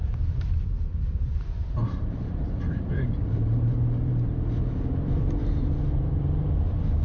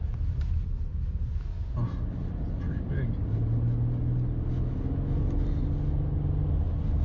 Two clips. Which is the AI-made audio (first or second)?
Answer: first